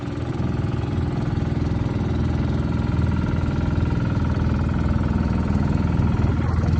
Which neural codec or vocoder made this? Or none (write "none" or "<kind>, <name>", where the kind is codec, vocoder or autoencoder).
none